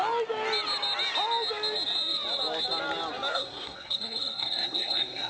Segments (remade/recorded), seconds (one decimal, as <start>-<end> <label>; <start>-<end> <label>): 0.0-3.3 recorded; 3.3-5.3 remade